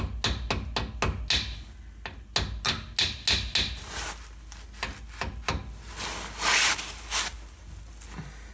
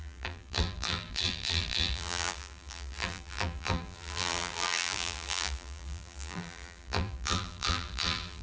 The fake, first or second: second